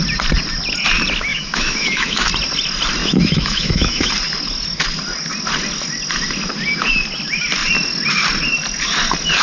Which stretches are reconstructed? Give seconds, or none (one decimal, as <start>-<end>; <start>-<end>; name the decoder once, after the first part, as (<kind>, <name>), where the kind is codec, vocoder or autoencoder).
1.3-2.3 (autoencoder, DAC-VAE); 3.0-4.1